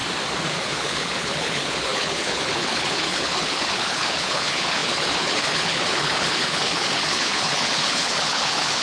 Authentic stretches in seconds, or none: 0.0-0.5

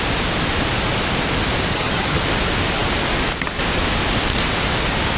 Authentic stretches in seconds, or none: 0.0-1.7; 2.2-5.2

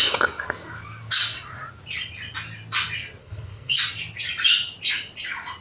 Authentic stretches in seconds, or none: 0.0-3.2; 3.8-5.6

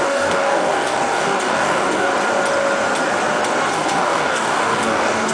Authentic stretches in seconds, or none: 2.1-3.7

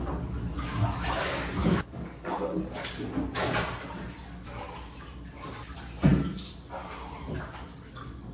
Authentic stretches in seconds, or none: 0.0-1.6; 2.9-7.7